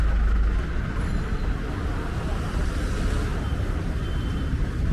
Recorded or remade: recorded